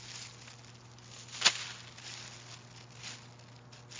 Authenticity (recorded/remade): recorded